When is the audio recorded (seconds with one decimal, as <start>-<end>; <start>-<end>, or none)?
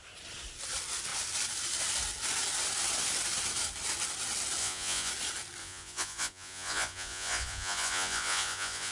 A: 0.0-4.6; 5.1-5.6